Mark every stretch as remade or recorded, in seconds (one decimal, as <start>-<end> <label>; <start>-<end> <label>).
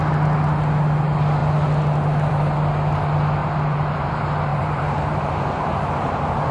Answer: 0.0-3.4 recorded; 3.4-4.1 remade; 4.1-4.5 recorded; 4.5-5.9 remade; 5.9-6.5 recorded